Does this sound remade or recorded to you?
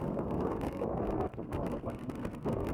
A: remade